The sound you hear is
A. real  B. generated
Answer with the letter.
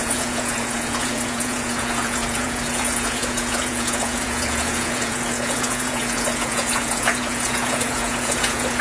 B